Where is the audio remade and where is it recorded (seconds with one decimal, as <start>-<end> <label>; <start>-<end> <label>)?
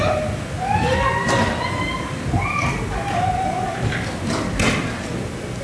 0.0-5.6 recorded